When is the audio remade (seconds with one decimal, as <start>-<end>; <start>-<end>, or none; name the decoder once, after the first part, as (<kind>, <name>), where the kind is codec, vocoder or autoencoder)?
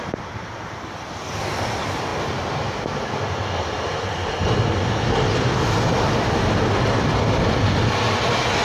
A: none